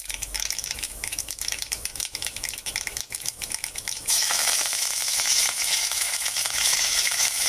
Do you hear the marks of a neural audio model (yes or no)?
yes